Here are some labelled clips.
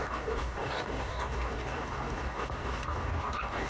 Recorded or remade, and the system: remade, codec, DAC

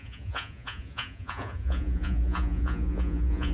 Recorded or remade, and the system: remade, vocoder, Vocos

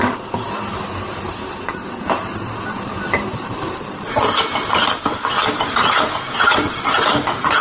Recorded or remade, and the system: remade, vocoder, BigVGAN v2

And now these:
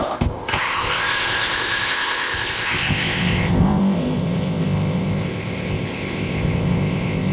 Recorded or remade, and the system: remade, codec, ZipCodec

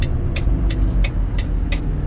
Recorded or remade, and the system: recorded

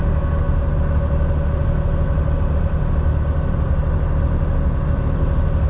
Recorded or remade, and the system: recorded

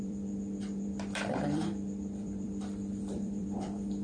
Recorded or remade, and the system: remade, vocoder, BigVGAN v2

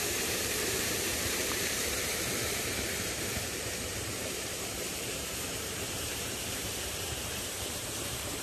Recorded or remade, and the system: remade, vocoder, BigVGAN v2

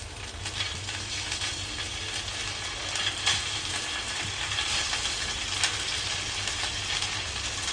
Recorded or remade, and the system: recorded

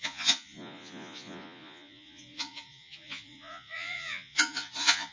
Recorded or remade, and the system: remade, vocoder, Vocos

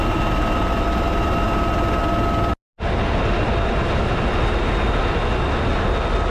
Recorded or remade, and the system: recorded